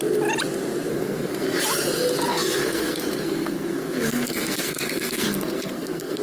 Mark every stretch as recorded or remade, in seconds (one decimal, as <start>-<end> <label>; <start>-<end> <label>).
0.0-0.9 recorded; 0.9-1.6 remade; 1.6-2.3 recorded; 2.3-6.2 remade